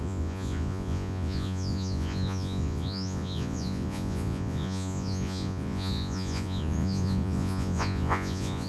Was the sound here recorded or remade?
remade